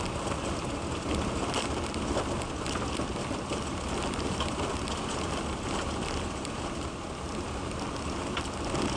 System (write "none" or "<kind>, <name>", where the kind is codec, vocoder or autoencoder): none